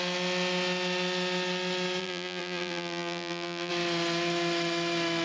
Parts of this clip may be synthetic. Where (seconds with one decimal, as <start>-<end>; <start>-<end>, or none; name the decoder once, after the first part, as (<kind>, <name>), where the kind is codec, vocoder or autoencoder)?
2.0-3.7 (vocoder, BigVGAN v2)